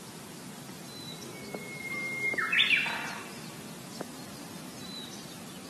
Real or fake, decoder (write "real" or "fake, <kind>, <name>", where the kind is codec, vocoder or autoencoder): real